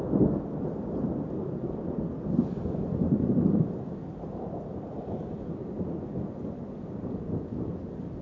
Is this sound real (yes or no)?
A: yes